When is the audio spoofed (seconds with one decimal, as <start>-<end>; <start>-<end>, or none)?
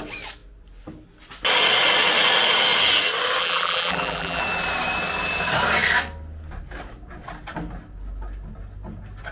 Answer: 3.4-4.4